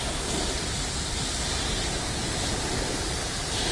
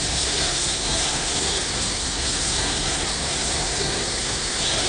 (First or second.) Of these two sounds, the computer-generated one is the second